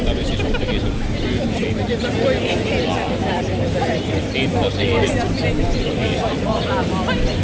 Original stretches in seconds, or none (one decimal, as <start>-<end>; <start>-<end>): 1.6-5.6